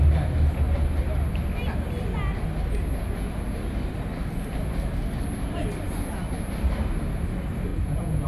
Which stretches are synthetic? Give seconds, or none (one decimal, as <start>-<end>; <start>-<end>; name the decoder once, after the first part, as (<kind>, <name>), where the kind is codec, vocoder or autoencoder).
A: 7.7-8.3 (vocoder, Vocos)